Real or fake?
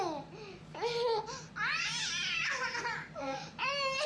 real